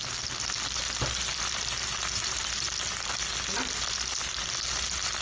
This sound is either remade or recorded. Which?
recorded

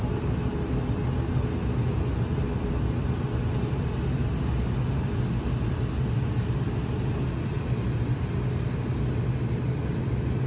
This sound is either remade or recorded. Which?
recorded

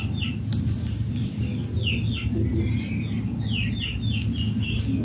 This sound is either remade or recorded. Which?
recorded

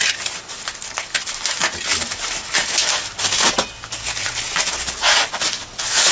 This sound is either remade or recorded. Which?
recorded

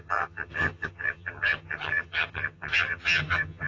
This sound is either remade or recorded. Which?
remade